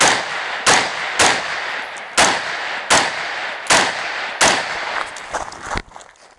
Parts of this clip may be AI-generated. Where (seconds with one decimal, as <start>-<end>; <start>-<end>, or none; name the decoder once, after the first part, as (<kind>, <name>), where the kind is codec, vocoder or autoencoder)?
none